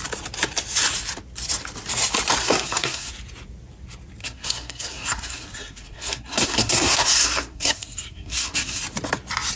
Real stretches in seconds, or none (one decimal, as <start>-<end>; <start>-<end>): 0.0-2.4; 3.1-4.2; 8.8-9.6